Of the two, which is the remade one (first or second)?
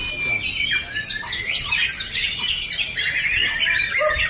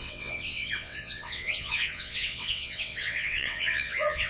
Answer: second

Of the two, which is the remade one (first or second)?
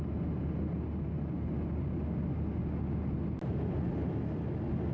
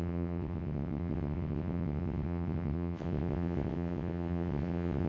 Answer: second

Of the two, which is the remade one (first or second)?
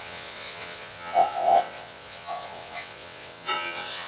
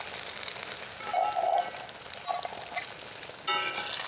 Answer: first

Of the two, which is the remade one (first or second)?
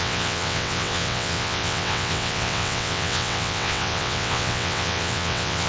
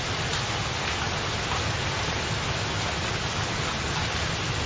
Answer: first